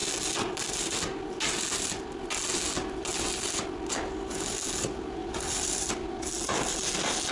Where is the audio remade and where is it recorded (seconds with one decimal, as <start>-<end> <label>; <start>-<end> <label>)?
0.0-5.2 recorded; 5.2-6.2 remade; 6.2-7.3 recorded